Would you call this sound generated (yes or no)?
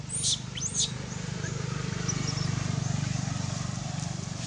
no